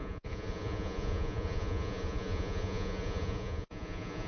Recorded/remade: remade